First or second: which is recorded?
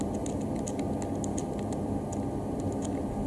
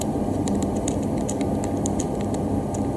first